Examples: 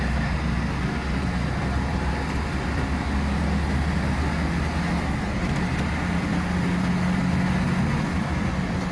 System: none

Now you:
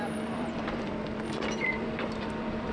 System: vocoder, BigVGAN v2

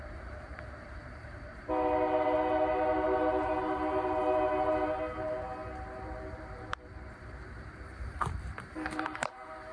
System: vocoder, BigVGAN v2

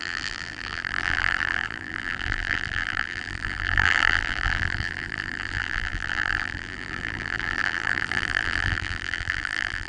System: vocoder, BigVGAN v2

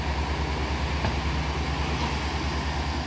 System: none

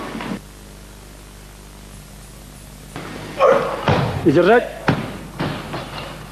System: none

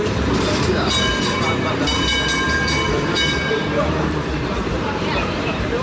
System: vocoder, BigVGAN v2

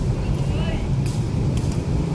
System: none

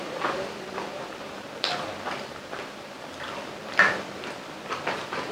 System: vocoder, BigVGAN v2